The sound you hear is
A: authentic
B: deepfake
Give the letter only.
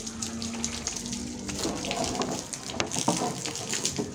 A